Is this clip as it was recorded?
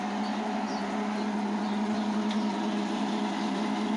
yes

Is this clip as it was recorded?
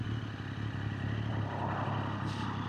yes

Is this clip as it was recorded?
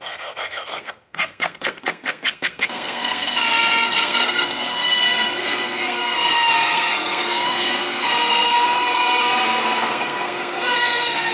no